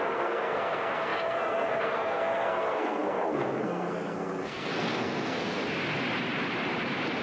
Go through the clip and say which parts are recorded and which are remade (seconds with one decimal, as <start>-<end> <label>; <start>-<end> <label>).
0.0-5.6 remade; 5.6-7.2 recorded